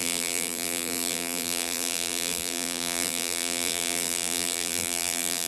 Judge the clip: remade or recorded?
remade